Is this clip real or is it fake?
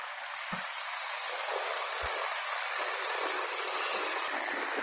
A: real